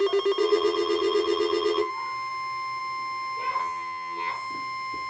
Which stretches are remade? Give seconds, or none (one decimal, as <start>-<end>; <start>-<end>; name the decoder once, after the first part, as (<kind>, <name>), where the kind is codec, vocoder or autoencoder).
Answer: 0.4-1.9 (vocoder, HiFi-GAN); 3.6-4.3